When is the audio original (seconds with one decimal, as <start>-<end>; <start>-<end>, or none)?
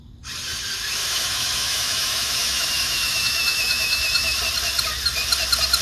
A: 0.0-1.0; 4.4-5.8